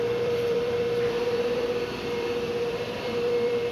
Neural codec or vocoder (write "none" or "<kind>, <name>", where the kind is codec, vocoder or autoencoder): vocoder, BigVGAN v2